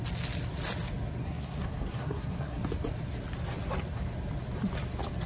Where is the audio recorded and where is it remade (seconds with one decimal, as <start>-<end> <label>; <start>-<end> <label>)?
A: 0.0-1.2 recorded; 1.2-2.6 remade; 2.6-5.3 recorded

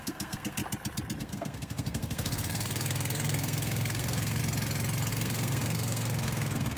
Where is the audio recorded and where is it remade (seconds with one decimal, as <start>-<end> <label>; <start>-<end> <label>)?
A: 0.0-0.6 remade; 0.6-1.2 recorded; 1.2-4.4 remade; 4.4-5.1 recorded; 5.1-6.8 remade

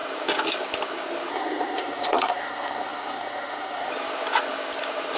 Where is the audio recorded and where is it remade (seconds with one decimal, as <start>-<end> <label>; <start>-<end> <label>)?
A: 0.0-1.3 recorded; 1.3-3.9 remade; 3.9-5.2 recorded

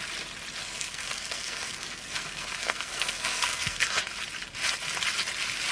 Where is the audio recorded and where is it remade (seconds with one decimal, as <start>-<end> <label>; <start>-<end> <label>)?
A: 0.0-0.6 recorded; 0.6-4.0 remade; 4.0-5.7 recorded

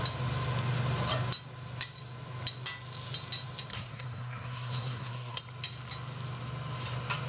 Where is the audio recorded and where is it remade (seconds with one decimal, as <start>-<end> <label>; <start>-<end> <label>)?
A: 0.0-3.7 recorded; 3.7-5.4 remade; 5.4-7.3 recorded

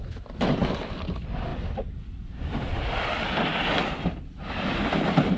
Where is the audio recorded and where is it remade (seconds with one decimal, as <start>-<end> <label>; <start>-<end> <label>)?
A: 0.0-5.4 recorded